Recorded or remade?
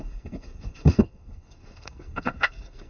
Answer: remade